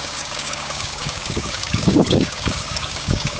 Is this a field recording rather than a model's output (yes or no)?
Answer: no